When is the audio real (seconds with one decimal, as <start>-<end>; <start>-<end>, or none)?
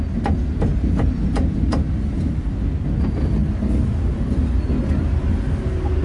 0.0-6.0